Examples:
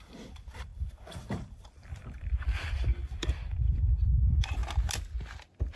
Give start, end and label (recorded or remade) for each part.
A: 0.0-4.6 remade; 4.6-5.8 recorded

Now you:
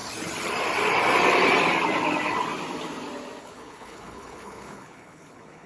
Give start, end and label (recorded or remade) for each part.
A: 0.0-3.4 recorded; 3.4-5.7 remade

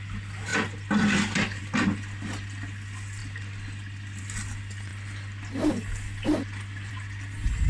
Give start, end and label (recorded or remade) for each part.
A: 0.0-3.2 recorded; 3.2-4.2 remade; 4.2-7.7 recorded